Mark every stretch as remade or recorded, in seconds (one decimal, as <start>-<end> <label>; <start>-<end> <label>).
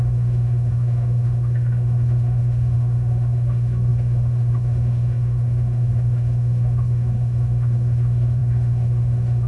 0.0-9.5 remade